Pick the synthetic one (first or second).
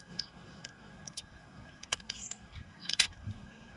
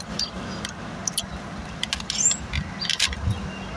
first